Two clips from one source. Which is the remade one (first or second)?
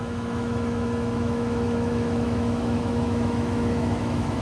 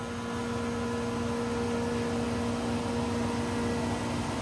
first